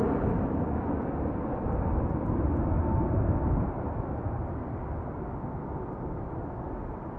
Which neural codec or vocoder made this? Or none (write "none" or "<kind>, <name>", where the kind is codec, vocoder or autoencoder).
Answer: none